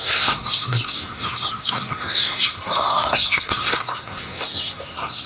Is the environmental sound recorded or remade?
remade